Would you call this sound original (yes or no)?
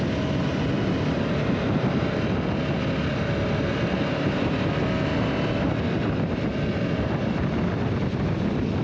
yes